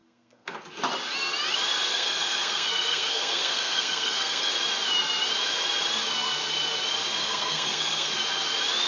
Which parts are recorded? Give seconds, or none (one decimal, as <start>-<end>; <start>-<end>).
0.6-1.9; 4.5-7.2; 8.1-8.9